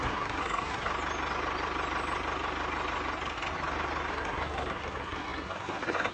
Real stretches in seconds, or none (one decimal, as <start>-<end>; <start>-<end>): 0.9-4.1